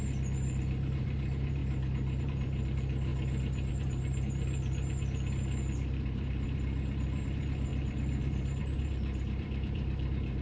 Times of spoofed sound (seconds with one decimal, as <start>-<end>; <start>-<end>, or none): 0.0-1.6; 2.2-3.1; 3.7-10.4